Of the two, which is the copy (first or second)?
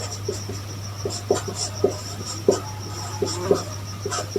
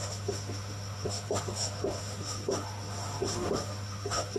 second